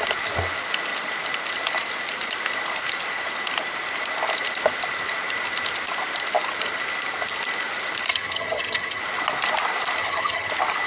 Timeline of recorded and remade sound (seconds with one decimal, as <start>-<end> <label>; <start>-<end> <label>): 0.0-8.1 recorded; 8.1-9.0 remade; 9.0-10.0 recorded; 10.0-10.5 remade; 10.5-10.9 recorded